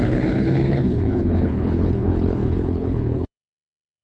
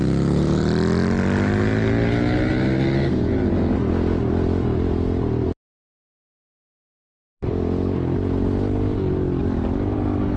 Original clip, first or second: second